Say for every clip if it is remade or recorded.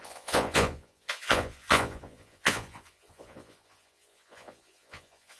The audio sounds remade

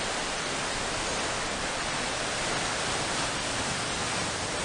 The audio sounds recorded